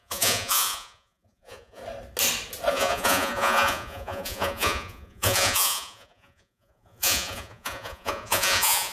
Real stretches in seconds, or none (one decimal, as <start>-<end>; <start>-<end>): 1.8-2.7